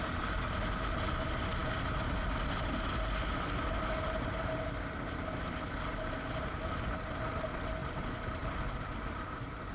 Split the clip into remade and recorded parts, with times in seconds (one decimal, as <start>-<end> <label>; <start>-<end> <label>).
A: 0.0-7.8 recorded; 7.8-8.6 remade; 8.6-9.7 recorded